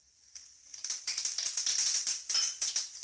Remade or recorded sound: recorded